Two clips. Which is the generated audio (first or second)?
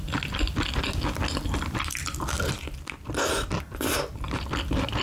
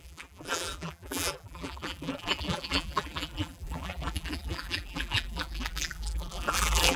second